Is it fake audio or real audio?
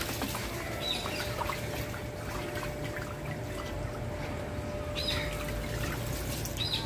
real